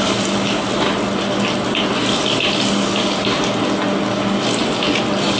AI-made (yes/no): no